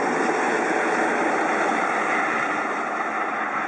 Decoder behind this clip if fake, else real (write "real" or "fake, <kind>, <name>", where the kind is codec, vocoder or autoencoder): real